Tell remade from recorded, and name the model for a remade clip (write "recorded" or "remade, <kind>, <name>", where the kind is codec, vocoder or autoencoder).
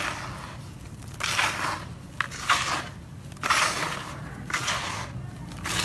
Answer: recorded